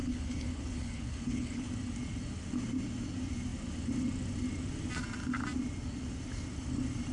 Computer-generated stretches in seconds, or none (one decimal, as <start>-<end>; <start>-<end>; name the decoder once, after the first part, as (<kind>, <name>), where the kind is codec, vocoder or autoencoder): 0.0-1.7 (codec, HILCodec)